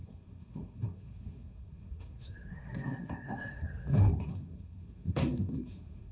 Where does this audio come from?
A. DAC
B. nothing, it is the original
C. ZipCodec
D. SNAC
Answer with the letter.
D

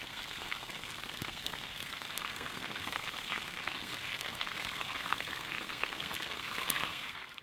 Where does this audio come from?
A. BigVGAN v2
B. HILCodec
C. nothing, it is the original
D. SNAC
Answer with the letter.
D